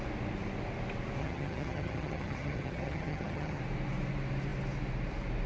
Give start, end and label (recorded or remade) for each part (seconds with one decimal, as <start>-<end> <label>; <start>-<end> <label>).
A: 0.0-1.2 recorded; 1.2-3.6 remade; 3.6-5.5 recorded